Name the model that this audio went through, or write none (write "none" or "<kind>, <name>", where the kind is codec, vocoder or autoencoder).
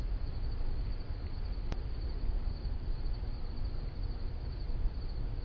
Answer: none